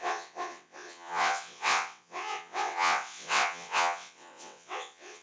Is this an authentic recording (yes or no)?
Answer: no